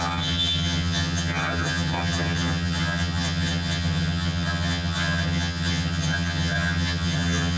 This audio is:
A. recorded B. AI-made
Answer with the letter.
B